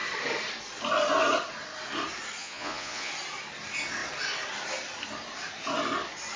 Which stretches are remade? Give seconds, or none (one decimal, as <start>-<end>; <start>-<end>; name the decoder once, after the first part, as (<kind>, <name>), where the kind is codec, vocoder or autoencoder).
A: 2.4-3.1 (vocoder, Vocos)